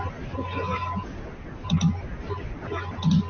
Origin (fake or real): real